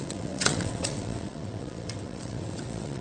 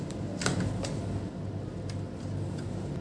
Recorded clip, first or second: second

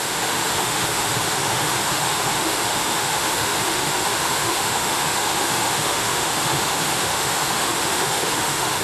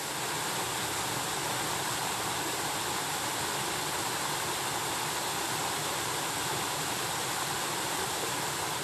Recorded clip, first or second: second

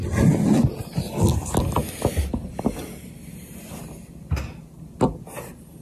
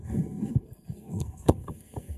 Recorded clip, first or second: first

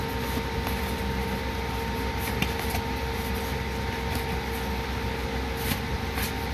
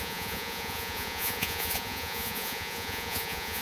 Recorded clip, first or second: first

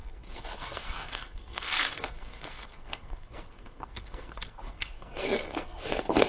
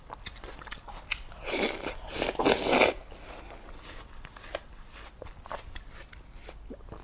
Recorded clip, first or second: second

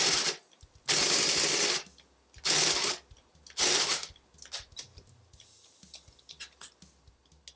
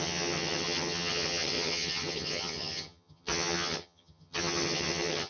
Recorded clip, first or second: first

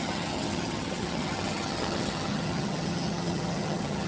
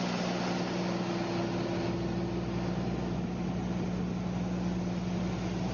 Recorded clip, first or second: second